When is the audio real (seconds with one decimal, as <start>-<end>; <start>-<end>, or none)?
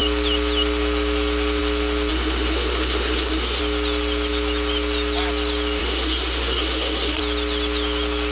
0.0-2.1; 3.6-5.8; 7.2-8.3